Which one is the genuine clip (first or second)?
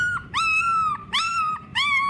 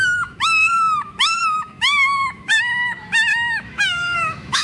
first